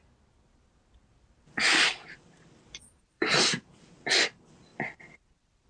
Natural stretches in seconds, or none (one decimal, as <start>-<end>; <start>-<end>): 0.0-1.1; 3.9-5.7